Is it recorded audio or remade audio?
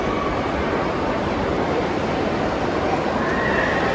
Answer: recorded